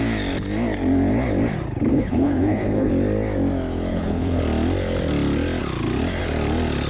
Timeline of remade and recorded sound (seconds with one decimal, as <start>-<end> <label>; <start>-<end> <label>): 0.0-1.9 recorded; 1.9-2.9 remade; 2.9-3.9 recorded; 3.9-4.4 remade; 4.4-6.9 recorded